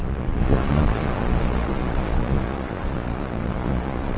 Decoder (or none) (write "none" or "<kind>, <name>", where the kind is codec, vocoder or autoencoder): vocoder, Vocos